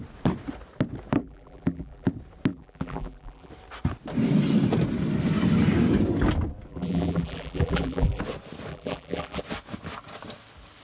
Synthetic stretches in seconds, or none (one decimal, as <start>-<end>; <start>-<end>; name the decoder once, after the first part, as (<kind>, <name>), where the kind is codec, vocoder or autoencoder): 1.2-2.1 (vocoder, BigVGAN v2); 2.5-3.5; 6.7-8.2; 8.7-9.4